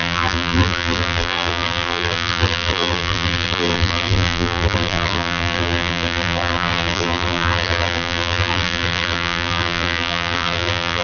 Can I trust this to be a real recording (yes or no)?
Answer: no